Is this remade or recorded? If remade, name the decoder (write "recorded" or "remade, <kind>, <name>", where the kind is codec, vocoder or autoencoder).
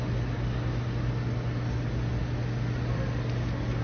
recorded